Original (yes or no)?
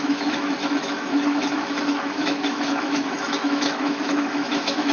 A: no